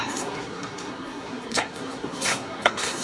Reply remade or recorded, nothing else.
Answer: remade